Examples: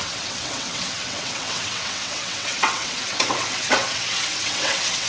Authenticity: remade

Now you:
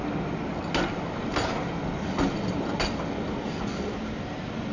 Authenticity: recorded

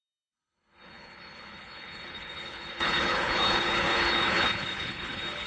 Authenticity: remade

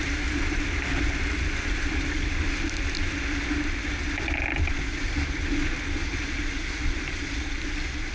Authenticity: recorded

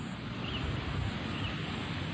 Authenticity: recorded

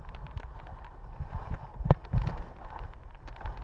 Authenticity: recorded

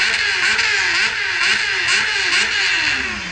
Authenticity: recorded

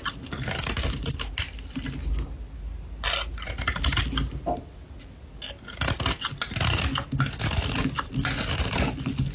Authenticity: recorded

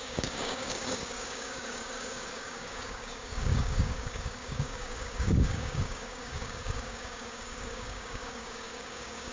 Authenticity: remade